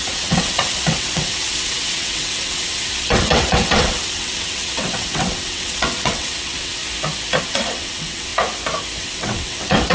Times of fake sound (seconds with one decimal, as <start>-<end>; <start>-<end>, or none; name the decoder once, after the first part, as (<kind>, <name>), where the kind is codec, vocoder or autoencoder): 0.0-6.8 (vocoder, WaveNeXt); 7.4-8.3; 9.0-9.9

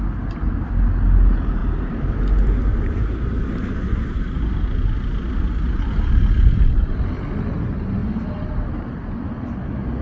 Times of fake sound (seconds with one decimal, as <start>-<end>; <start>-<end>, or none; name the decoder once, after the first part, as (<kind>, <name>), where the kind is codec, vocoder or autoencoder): none

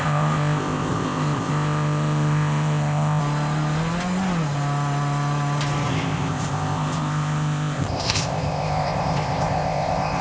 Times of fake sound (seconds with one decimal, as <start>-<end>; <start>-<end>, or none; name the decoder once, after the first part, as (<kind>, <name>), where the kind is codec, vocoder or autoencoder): 0.0-3.2 (codec, ZipCodec); 5.9-10.2

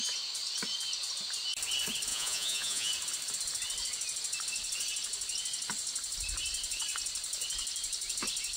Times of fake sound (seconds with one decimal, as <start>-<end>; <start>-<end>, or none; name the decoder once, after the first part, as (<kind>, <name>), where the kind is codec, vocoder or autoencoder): 2.1-2.9 (vocoder, Vocos)